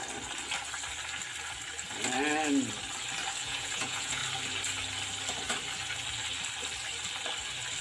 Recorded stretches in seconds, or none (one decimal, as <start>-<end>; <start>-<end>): 0.0-3.4; 4.2-7.8